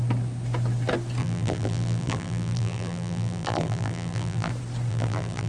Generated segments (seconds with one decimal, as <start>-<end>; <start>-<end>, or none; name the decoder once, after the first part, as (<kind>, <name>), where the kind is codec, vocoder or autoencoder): 1.2-4.5 (vocoder, BigVGAN v2); 4.9-5.5